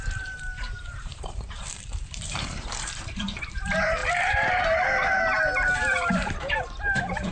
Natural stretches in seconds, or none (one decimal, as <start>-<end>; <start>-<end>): none